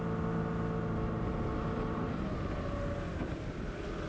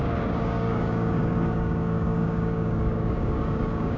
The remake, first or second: second